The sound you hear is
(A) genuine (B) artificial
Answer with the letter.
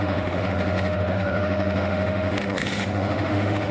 B